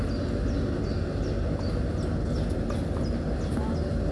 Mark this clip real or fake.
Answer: real